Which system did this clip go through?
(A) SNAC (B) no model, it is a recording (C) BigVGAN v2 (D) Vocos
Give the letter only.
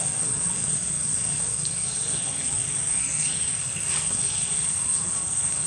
A